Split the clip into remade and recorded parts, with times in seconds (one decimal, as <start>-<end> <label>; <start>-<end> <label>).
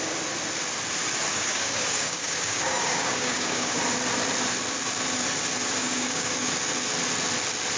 0.0-1.3 recorded; 1.3-3.8 remade; 3.8-5.8 recorded; 5.8-6.5 remade; 6.5-7.8 recorded